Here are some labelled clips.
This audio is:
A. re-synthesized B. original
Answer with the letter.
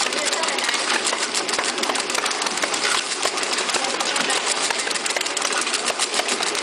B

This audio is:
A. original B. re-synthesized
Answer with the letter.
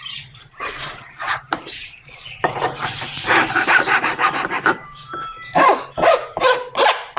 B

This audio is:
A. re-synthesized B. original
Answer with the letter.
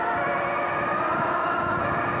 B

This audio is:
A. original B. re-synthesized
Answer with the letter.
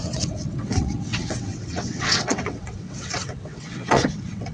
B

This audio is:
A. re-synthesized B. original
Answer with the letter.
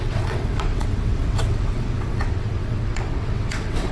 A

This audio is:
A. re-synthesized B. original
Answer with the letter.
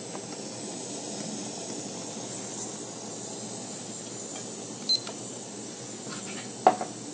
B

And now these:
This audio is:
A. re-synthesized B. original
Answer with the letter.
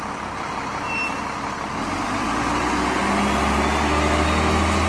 B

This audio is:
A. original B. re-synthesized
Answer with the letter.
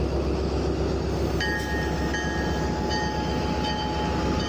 A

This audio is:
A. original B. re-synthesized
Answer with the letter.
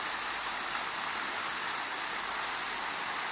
A